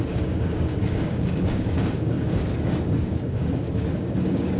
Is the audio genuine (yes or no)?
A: no